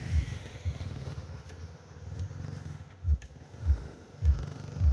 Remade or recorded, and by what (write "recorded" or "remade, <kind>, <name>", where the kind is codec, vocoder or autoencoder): remade, autoencoder, DAC-VAE